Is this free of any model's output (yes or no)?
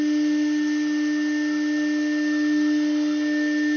yes